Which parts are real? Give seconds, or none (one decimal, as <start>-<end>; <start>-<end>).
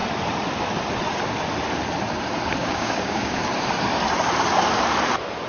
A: 0.0-2.6; 3.4-5.5